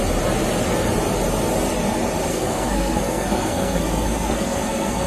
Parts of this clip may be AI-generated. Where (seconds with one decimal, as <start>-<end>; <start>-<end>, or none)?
2.3-5.1